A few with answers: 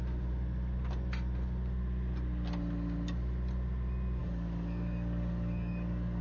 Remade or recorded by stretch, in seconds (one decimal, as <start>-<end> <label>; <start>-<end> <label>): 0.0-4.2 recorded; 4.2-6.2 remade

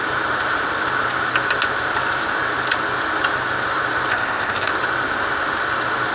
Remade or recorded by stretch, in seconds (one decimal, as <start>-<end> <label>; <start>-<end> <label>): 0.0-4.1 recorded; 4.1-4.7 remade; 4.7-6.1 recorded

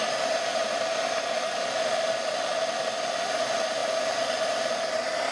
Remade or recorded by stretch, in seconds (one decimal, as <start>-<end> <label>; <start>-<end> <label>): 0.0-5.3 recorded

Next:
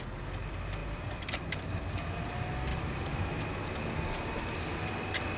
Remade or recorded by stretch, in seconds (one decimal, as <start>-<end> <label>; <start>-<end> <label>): 0.0-0.8 recorded; 0.8-2.3 remade; 2.3-2.7 recorded; 2.7-3.4 remade; 3.4-5.4 recorded

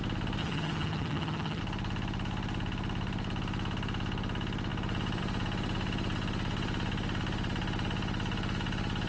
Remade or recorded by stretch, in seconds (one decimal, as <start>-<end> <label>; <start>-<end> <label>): 0.0-0.4 recorded; 0.4-1.6 remade; 1.6-9.1 recorded